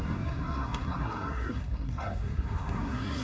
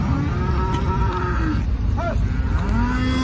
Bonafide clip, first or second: second